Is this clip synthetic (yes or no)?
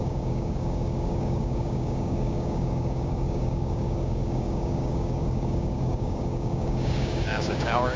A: yes